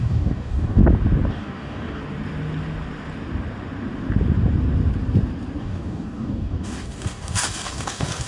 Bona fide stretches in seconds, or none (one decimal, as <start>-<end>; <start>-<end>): 0.8-1.3; 2.0-5.6